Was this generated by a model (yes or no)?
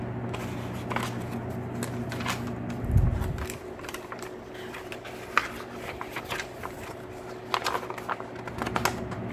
no